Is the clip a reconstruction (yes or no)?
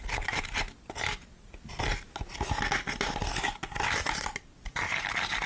no